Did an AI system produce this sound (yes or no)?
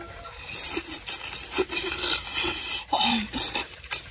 yes